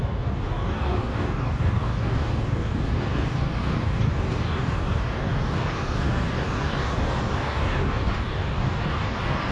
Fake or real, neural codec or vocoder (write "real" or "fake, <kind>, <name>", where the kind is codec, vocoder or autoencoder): fake, codec, DAC